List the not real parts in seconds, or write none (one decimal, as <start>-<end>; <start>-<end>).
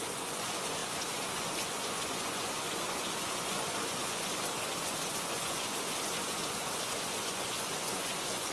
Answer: 0.0-8.5